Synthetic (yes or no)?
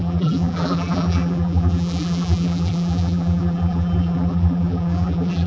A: yes